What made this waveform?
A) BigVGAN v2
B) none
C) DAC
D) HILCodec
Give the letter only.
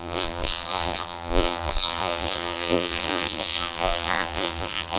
A